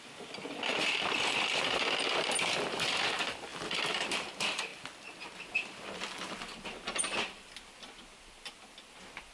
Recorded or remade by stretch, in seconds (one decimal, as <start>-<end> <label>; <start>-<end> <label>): 0.0-9.3 recorded